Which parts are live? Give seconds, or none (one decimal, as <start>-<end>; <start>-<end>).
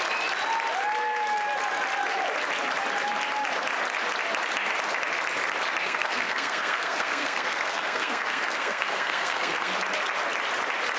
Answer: 0.0-5.8; 9.7-11.0